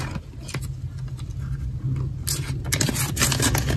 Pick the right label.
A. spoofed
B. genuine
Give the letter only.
B